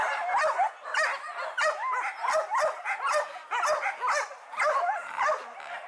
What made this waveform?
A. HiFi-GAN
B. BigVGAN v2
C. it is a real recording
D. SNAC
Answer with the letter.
C